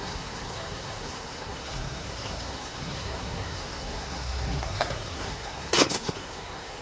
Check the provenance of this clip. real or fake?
fake